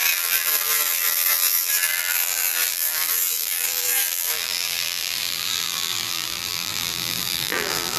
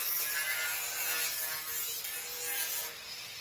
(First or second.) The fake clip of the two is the first